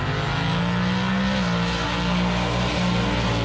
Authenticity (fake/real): real